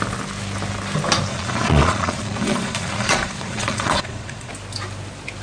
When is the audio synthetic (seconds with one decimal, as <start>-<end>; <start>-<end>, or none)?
1.3-4.5